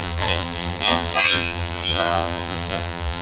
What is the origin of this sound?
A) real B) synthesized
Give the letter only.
B